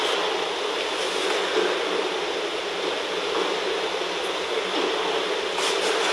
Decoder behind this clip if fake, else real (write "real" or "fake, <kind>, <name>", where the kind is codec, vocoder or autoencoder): real